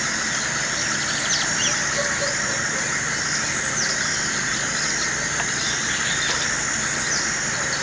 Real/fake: real